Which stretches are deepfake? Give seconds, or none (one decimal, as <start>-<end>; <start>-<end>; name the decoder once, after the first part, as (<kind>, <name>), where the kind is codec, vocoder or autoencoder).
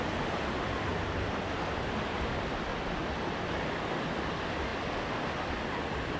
0.9-3.0 (vocoder, BigVGAN v2)